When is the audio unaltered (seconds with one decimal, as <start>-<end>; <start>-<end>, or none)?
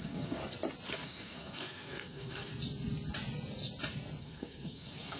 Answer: 0.4-0.9; 2.5-4.2